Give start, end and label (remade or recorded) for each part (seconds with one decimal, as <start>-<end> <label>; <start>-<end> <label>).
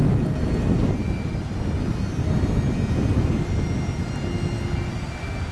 0.0-5.5 recorded